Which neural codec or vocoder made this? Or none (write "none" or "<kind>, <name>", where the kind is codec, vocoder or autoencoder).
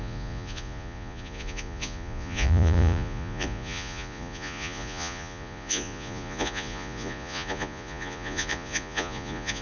vocoder, Vocos